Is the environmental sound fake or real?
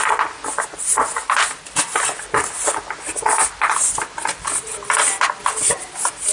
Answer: real